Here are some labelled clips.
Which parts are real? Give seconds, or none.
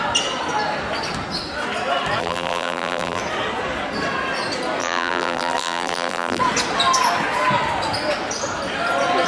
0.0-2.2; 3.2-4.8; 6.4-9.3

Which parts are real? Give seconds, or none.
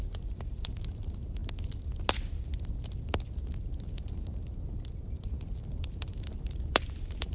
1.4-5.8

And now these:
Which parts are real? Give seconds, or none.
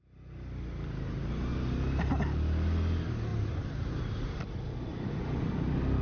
0.0-1.5; 2.2-3.3; 4.3-4.9; 5.5-6.0